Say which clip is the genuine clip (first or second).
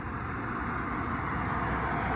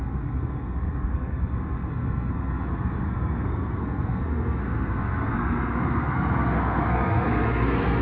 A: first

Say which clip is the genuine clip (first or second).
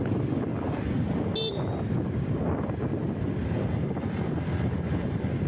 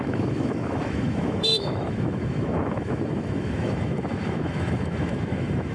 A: first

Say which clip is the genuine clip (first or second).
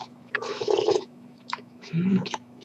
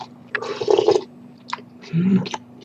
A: second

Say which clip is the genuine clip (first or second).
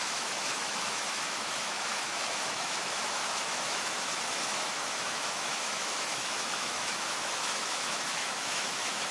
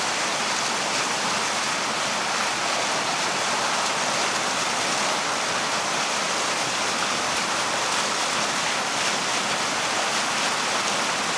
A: second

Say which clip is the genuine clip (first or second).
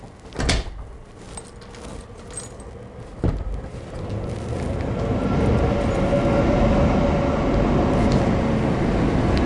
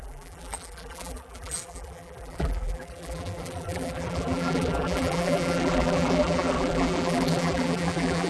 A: first